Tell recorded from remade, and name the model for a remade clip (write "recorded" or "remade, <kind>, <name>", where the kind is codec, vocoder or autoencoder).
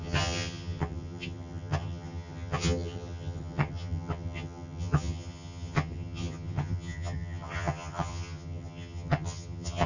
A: remade, vocoder, HiFi-GAN